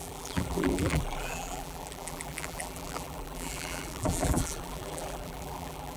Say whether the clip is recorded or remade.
remade